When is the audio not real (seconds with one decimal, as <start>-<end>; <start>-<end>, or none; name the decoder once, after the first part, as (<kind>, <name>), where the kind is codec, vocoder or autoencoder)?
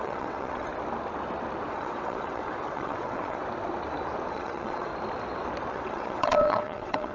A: 0.0-0.7 (vocoder, WaveNeXt); 1.7-3.4; 4.3-4.9; 5.7-7.1